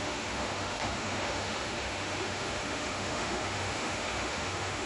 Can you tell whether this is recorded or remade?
remade